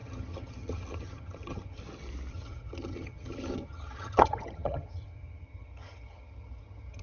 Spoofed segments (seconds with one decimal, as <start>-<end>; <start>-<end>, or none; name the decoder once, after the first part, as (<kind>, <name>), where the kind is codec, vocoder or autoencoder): 0.0-1.8 (vocoder, HiFi-GAN); 2.3-7.0